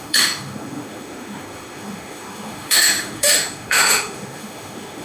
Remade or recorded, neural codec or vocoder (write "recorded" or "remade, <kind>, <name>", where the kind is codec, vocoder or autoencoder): remade, autoencoder, DAC-VAE